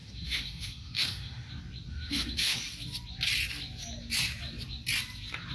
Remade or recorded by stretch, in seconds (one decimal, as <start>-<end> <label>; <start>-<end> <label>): 0.0-1.5 remade; 1.5-1.9 recorded; 1.9-2.6 remade; 2.6-5.5 recorded